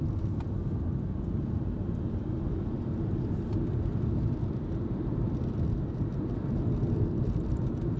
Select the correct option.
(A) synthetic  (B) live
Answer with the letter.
A